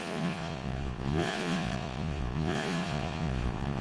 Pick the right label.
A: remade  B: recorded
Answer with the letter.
A